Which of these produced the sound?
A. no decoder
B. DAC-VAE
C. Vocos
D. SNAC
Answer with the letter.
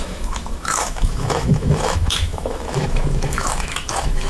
B